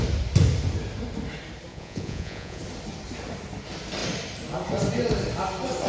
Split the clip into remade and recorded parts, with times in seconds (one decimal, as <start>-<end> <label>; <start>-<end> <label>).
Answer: 0.0-1.7 recorded; 1.7-2.6 remade; 2.6-5.9 recorded